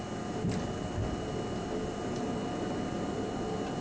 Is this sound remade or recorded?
recorded